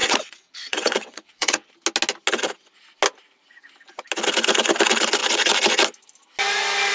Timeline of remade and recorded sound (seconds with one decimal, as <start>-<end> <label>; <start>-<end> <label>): 0.0-1.7 remade; 1.7-6.9 recorded